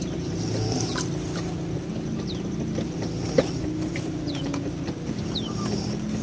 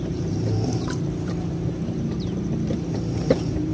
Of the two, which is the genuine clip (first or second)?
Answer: first